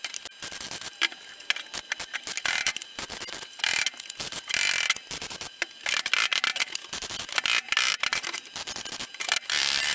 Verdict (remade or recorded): recorded